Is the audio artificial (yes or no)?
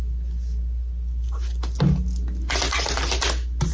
no